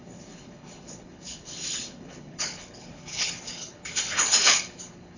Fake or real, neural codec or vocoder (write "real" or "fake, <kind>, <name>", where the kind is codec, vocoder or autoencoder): fake, codec, HILCodec